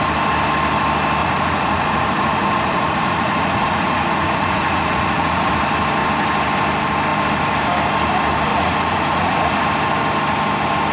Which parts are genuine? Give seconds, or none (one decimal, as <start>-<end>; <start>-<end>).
0.0-1.2; 5.5-8.5; 9.6-10.9